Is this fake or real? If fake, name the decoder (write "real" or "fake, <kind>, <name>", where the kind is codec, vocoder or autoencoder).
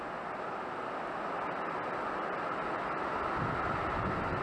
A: real